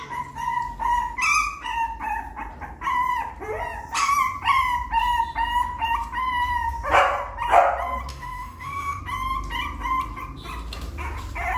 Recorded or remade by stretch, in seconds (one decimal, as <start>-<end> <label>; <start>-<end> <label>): 0.0-8.1 recorded; 8.1-9.0 remade; 9.0-11.6 recorded